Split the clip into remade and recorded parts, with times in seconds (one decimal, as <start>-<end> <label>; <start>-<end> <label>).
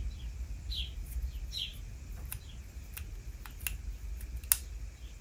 0.0-5.2 recorded